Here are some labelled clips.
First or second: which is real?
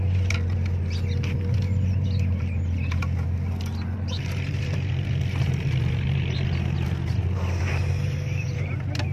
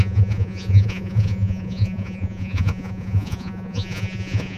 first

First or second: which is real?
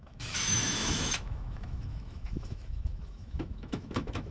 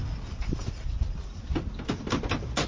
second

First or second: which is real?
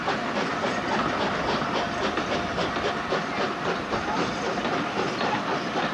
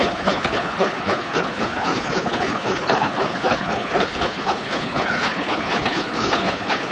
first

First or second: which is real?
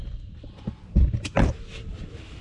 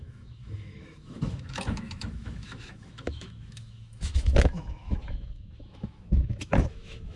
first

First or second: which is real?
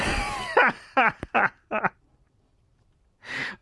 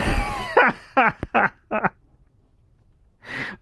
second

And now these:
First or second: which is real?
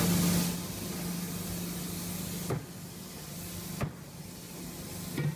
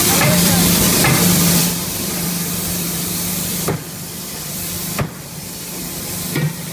first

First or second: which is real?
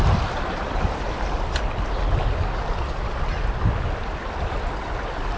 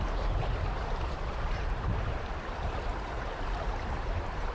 first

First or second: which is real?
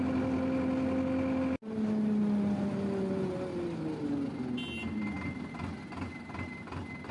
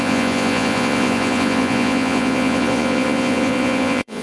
first